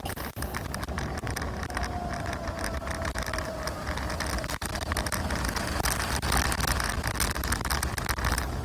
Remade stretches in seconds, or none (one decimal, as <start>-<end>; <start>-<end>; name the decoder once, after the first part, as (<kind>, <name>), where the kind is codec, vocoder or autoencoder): none